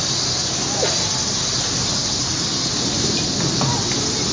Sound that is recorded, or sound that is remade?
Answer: recorded